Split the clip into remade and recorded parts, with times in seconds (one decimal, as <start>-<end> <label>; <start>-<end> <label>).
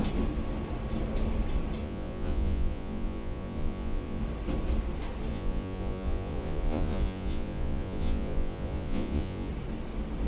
0.0-1.8 recorded; 1.8-4.2 remade; 4.2-5.3 recorded; 5.3-9.5 remade; 9.5-10.3 recorded